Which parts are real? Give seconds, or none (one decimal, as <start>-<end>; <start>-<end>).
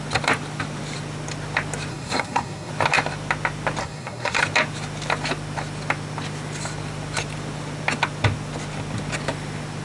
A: 0.0-1.9; 2.7-3.8; 4.4-9.8